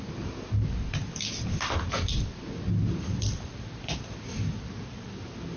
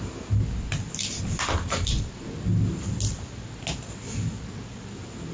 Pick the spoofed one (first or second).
first